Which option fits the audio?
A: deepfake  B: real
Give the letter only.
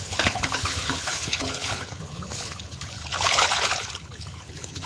A